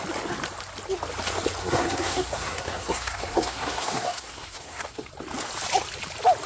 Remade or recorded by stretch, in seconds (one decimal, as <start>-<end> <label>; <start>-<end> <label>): 0.0-1.6 recorded; 1.6-5.1 remade; 5.1-6.5 recorded